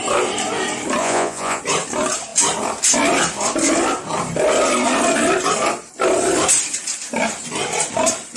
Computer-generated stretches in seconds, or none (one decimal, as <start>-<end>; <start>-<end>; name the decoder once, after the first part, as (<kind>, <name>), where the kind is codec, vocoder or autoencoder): 1.0-1.6 (vocoder, Vocos)